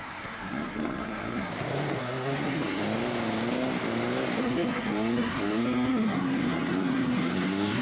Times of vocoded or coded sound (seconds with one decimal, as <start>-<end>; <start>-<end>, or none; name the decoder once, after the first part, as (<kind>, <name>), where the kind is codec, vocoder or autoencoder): 0.0-1.5 (codec, SNAC); 2.0-2.8; 4.4-7.8